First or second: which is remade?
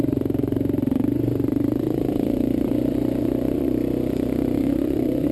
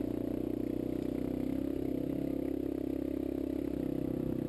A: first